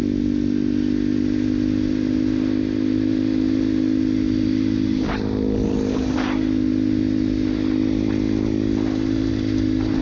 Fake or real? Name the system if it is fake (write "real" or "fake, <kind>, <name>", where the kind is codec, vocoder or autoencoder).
real